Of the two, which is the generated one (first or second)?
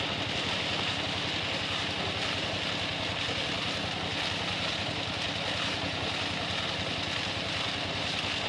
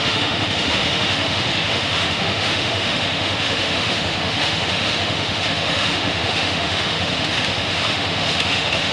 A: second